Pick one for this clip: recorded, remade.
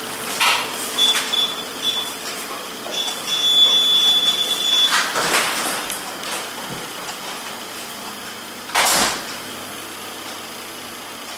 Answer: recorded